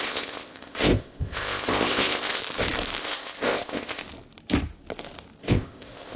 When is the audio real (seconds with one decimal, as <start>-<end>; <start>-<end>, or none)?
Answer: 2.4-3.0; 4.0-5.4